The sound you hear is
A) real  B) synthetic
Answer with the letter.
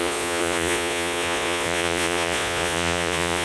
B